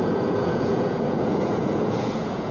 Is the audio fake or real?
fake